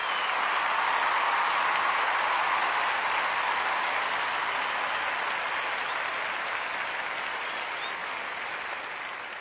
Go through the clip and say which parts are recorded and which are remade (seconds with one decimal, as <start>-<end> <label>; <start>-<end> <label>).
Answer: 0.0-9.4 recorded